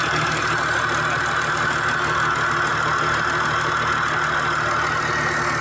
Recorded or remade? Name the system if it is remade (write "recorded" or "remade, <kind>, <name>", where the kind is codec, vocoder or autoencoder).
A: recorded